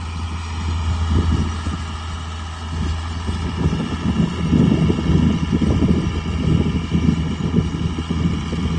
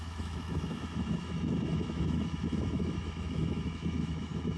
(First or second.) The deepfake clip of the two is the second